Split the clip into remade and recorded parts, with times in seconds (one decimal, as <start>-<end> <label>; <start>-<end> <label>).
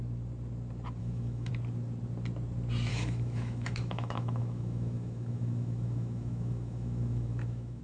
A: 0.0-1.0 recorded; 1.0-1.5 remade; 1.5-2.9 recorded; 2.9-7.8 remade